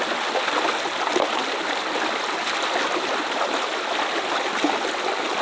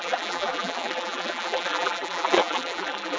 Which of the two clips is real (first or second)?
first